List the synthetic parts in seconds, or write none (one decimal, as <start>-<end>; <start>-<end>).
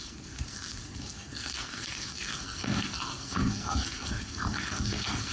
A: 0.0-5.3